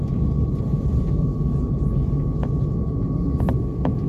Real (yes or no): yes